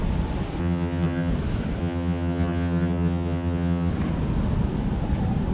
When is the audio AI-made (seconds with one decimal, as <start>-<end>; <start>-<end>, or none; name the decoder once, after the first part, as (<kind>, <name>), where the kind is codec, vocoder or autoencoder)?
0.6-1.3 (vocoder, HiFi-GAN); 1.8-3.9